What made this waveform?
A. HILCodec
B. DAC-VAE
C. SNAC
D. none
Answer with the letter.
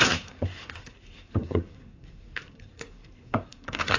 C